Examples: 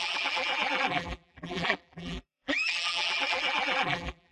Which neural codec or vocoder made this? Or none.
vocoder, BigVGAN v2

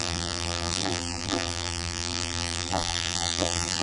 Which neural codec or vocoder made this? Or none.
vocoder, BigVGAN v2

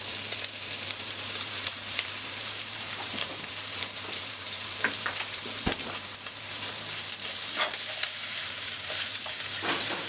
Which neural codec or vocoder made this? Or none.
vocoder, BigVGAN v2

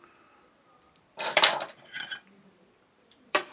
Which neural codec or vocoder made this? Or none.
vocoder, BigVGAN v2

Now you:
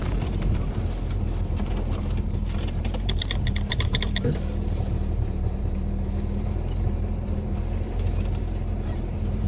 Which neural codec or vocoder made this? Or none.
vocoder, BigVGAN v2